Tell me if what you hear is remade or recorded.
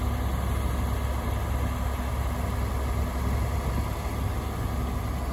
recorded